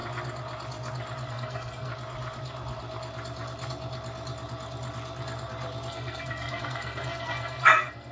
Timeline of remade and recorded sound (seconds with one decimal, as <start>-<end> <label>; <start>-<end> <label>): 0.0-1.3 recorded; 1.3-1.9 remade; 1.9-5.9 recorded; 5.9-8.1 remade